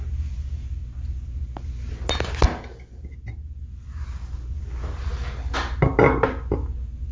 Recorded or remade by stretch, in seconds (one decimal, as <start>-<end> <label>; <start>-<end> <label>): 0.0-7.1 recorded